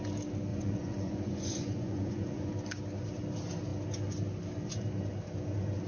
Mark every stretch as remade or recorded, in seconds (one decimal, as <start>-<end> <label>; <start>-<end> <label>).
0.0-0.5 recorded; 0.5-2.5 remade; 2.5-5.9 recorded